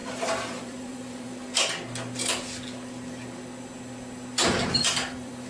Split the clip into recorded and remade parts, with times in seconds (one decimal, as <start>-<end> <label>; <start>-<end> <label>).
0.0-1.3 remade; 1.3-4.6 recorded; 4.6-5.5 remade